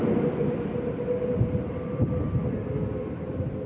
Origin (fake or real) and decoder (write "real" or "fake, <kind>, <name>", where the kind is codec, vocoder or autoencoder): real